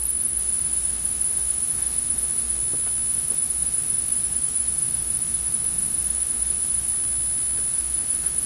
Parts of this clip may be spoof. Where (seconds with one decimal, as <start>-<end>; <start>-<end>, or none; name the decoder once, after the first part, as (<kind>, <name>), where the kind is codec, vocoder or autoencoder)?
0.0-2.6 (autoencoder, DAC-VAE); 3.1-6.9; 7.7-8.5